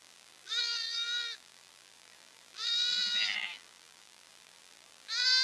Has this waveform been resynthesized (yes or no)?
yes